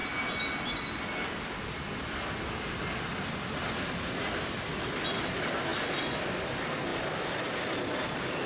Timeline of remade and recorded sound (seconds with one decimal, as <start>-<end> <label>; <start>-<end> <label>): 0.0-8.5 recorded